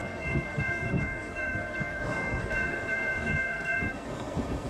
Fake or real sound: fake